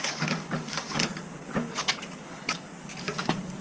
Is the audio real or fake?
fake